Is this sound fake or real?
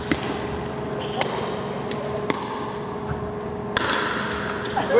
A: real